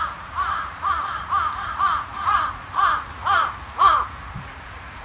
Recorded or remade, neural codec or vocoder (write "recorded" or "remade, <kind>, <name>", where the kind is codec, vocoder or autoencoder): remade, vocoder, Vocos